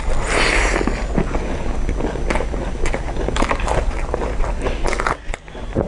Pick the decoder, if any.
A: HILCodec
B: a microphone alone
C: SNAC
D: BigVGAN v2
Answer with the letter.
B